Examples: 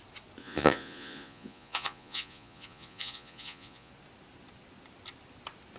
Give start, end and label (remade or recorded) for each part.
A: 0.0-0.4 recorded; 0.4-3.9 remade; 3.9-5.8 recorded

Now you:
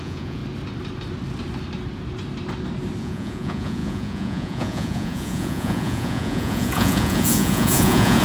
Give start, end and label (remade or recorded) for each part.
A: 0.0-0.4 remade; 0.4-3.0 recorded; 3.0-8.2 remade

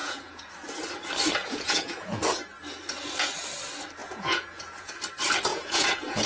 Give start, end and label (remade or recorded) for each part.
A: 0.0-0.5 remade; 0.5-1.4 recorded; 1.4-2.2 remade; 2.2-4.0 recorded; 4.0-4.9 remade; 4.9-5.5 recorded; 5.5-6.3 remade